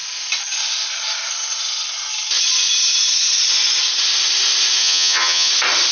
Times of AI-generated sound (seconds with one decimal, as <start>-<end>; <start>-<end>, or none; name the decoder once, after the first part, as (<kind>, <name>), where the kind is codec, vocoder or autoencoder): 4.8-5.5 (vocoder, HiFi-GAN)